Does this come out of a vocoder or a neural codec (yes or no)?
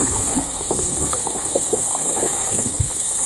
yes